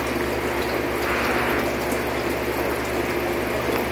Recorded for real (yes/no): yes